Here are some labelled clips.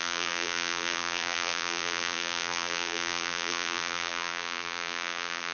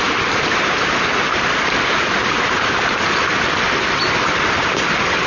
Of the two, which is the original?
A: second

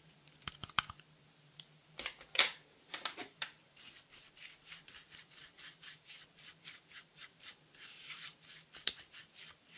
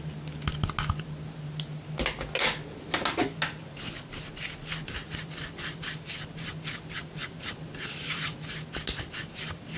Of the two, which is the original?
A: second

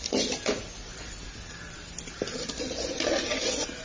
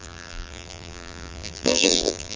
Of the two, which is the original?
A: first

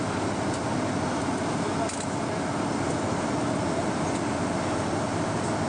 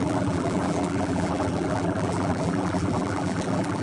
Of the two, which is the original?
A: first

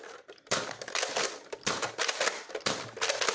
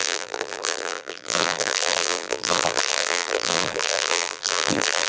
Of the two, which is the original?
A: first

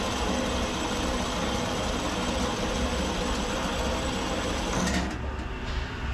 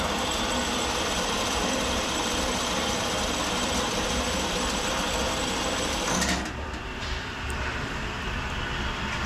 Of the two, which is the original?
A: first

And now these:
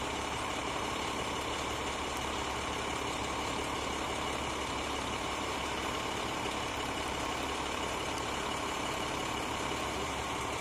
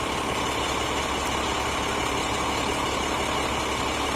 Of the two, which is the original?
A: second